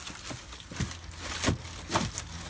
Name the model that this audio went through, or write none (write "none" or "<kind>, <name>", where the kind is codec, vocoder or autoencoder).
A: none